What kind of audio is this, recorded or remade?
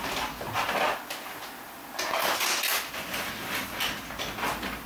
recorded